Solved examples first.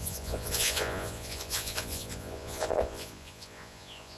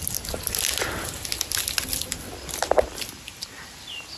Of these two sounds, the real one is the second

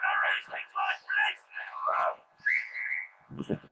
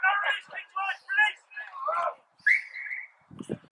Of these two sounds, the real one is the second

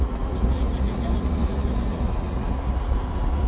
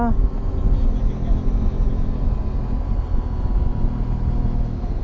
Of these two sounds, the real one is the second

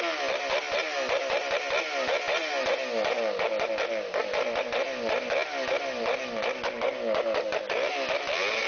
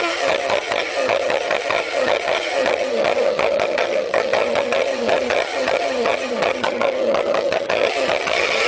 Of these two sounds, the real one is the first